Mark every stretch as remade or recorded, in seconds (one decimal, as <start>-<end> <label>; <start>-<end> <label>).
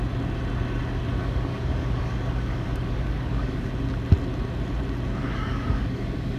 0.0-1.2 recorded; 1.2-3.7 remade; 3.7-5.2 recorded; 5.2-6.4 remade